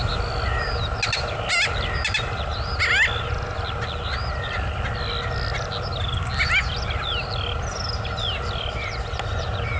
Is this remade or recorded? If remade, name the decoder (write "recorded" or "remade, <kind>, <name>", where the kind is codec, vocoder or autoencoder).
recorded